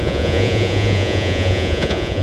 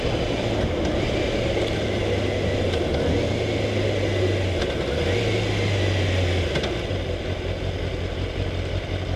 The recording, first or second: second